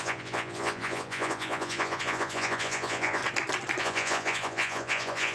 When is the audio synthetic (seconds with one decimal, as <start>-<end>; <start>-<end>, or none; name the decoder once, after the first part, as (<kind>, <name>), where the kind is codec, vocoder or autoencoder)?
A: 0.0-3.2 (vocoder, Vocos); 3.8-5.3